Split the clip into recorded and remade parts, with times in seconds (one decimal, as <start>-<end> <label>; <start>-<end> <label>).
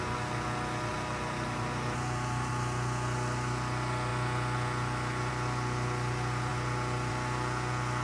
0.0-0.9 recorded; 0.9-2.5 remade; 2.5-8.0 recorded